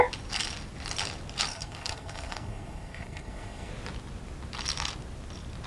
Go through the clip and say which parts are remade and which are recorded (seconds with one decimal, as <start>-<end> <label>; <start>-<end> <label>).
0.0-1.5 recorded; 1.5-3.7 remade; 3.7-5.7 recorded

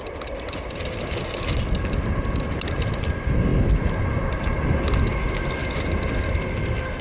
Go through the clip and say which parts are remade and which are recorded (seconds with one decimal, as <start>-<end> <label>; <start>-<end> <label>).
0.0-7.0 recorded

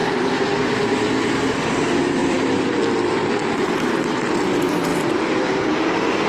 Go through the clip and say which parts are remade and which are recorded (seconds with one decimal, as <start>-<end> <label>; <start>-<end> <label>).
0.0-1.8 remade; 1.8-2.2 recorded; 2.2-4.3 remade; 4.3-4.9 recorded; 4.9-5.8 remade; 5.8-6.3 recorded

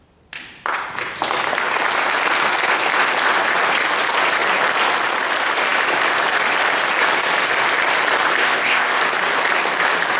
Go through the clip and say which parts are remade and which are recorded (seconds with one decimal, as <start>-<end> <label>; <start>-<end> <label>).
0.0-8.4 recorded; 8.4-9.0 remade; 9.0-10.2 recorded